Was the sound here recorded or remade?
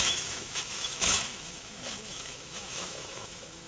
remade